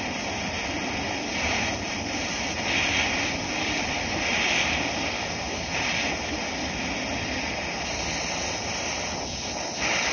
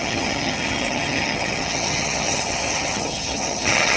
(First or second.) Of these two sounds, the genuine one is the first